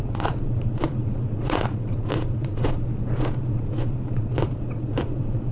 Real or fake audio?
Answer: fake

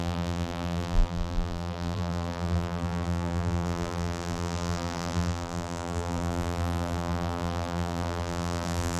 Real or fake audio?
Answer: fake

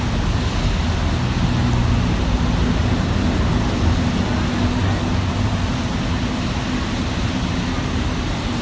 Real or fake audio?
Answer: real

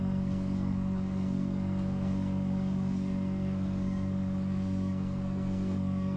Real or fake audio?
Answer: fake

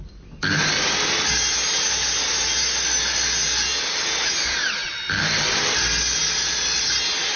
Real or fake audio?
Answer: real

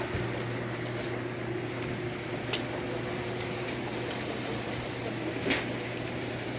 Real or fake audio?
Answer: real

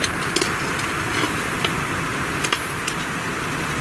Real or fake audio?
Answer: real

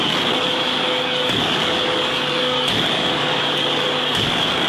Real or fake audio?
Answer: fake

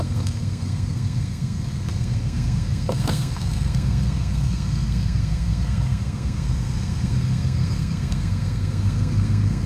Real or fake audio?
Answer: fake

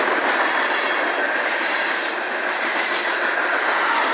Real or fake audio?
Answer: real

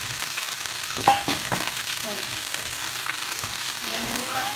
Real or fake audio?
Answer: fake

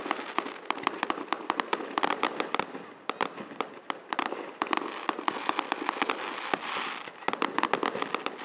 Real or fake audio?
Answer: real